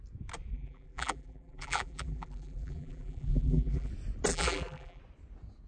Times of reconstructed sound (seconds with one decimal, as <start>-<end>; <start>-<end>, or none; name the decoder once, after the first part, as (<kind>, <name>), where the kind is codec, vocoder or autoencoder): 0.5-3.9 (vocoder, BigVGAN v2); 4.3-5.0